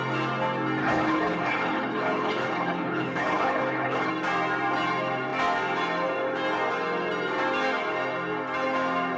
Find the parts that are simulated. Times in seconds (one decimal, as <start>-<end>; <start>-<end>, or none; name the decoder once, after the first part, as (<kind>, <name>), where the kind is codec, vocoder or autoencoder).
0.8-4.1 (codec, HILCodec)